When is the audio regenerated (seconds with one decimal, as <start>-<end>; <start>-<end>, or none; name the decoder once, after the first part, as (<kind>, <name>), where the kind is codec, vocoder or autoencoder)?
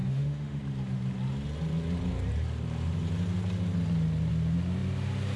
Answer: 0.0-0.6 (autoencoder, DAC-VAE)